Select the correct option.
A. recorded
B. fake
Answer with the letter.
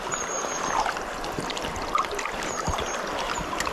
A